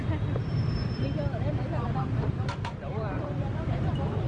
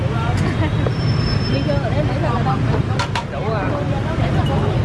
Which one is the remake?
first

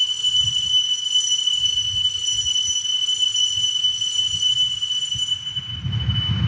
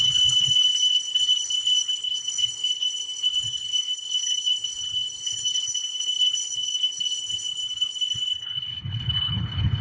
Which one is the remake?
second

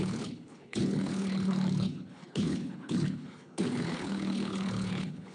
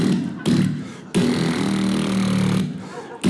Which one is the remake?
first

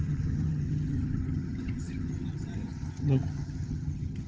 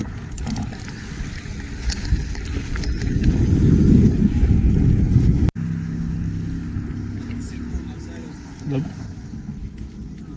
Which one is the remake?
first